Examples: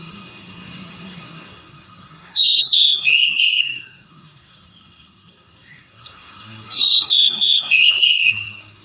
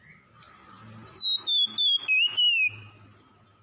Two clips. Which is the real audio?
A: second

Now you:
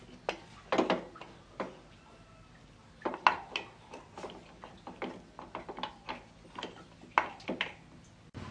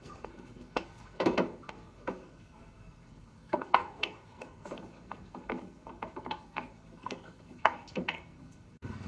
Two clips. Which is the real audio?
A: first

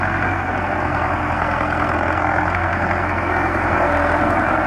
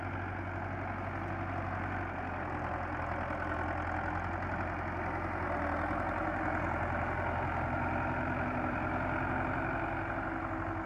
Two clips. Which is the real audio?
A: second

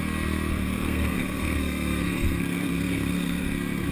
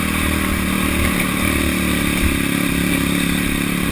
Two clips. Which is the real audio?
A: second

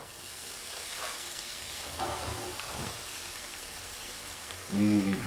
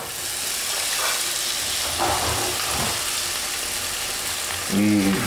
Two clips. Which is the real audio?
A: second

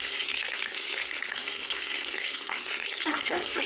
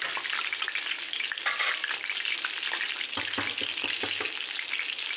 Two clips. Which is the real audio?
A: second